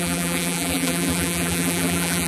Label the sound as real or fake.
fake